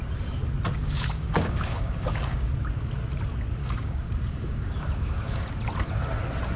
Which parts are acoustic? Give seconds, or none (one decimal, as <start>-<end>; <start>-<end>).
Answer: 0.0-0.8; 2.5-3.6; 5.5-6.6